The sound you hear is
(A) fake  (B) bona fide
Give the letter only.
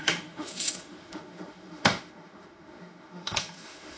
A